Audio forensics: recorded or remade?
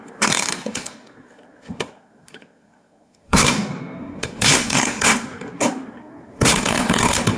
remade